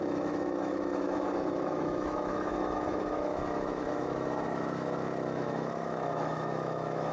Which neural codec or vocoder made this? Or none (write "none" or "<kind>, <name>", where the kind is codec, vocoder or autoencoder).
autoencoder, DAC-VAE